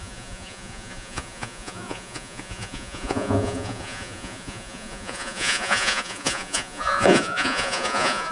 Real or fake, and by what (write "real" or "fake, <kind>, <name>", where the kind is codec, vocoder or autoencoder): fake, vocoder, Vocos